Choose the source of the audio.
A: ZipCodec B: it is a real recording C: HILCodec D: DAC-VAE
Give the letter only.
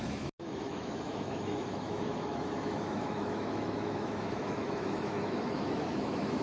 D